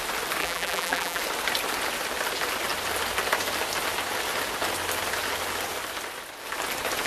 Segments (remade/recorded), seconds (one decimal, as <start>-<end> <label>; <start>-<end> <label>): 0.0-0.4 recorded; 0.4-1.2 remade; 1.2-7.1 recorded